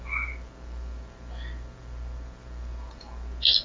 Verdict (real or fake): real